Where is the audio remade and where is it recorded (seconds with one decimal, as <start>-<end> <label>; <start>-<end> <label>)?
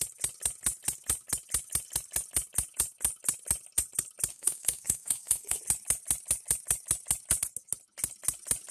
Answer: 0.0-4.3 recorded; 4.3-5.6 remade; 5.6-8.7 recorded